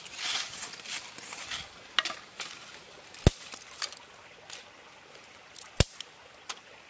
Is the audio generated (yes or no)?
no